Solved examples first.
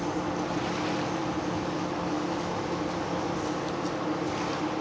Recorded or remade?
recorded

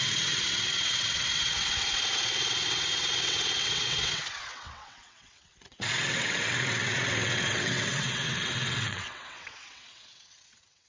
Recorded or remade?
remade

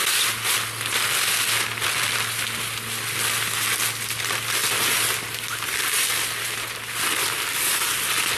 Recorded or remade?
recorded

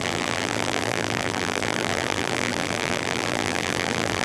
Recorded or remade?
remade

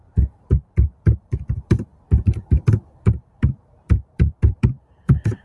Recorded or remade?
remade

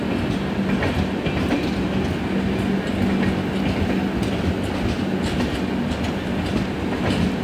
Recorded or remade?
recorded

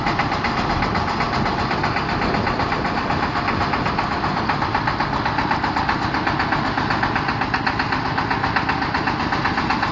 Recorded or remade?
recorded